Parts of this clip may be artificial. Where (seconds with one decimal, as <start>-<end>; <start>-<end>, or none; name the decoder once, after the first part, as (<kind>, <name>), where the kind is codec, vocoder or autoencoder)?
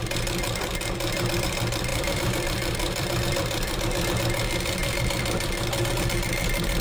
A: 1.9-3.8 (vocoder, BigVGAN v2)